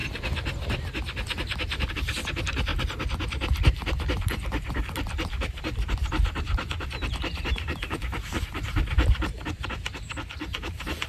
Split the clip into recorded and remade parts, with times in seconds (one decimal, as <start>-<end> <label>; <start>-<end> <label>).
0.0-1.9 recorded; 1.9-2.7 remade; 2.7-4.2 recorded; 4.2-11.1 remade